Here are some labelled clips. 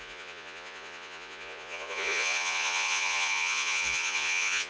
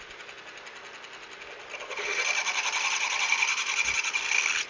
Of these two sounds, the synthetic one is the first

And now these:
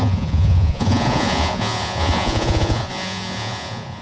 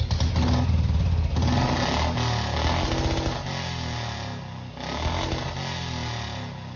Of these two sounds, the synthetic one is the first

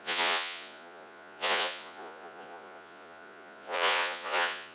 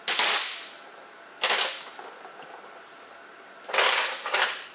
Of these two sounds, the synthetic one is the first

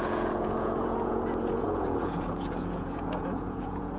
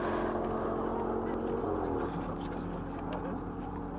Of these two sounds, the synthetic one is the first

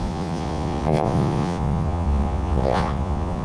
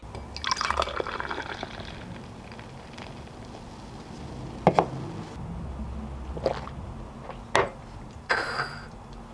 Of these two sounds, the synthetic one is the first